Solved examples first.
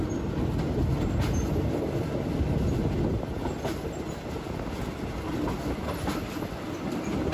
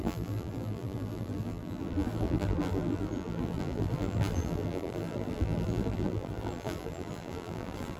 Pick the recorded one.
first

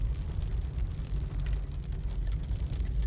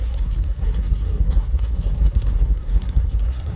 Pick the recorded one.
first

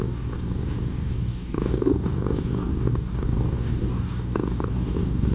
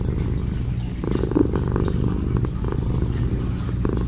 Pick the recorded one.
second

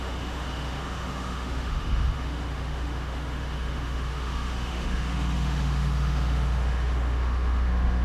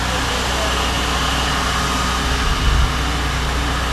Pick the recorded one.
second